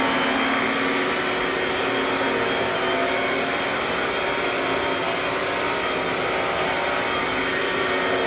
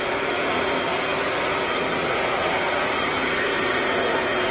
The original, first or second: first